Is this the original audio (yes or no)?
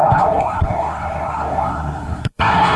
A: no